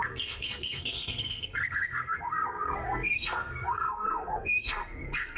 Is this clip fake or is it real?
fake